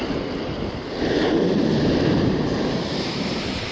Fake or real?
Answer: fake